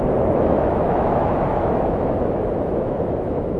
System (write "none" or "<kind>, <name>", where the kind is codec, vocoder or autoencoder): autoencoder, DAC-VAE